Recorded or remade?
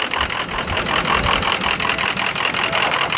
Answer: recorded